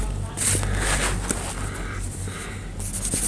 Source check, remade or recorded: recorded